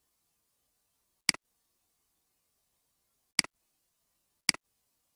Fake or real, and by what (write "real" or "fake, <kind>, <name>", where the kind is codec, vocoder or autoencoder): real